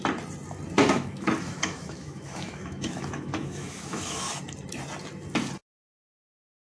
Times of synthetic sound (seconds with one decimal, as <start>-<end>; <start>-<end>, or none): 0.8-4.4